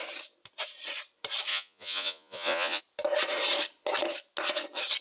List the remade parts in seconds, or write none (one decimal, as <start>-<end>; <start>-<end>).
1.5-2.8

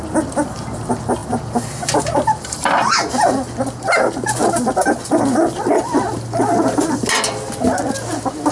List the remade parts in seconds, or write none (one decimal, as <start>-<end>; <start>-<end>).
none

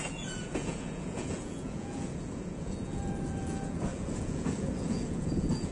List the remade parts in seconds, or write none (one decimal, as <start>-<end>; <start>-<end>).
0.0-5.7

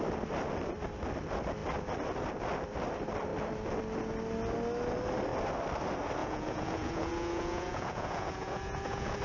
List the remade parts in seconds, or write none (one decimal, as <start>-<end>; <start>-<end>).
6.2-9.2

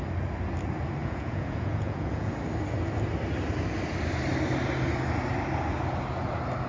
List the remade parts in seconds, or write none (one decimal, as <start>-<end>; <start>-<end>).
1.0-2.3